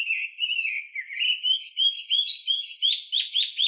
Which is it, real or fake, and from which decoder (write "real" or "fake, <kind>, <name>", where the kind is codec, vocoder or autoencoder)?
real